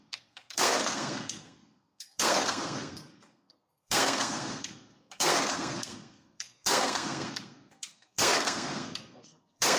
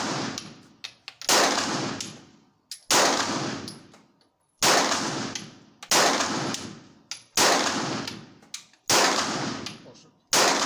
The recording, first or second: second